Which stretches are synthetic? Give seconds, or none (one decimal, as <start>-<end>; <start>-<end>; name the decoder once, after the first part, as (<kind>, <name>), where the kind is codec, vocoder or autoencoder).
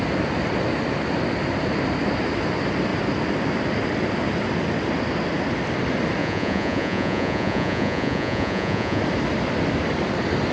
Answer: 6.2-9.0 (vocoder, Vocos)